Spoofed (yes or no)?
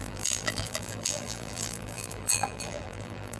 yes